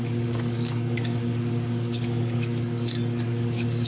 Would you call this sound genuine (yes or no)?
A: no